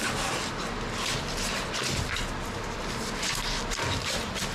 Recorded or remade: recorded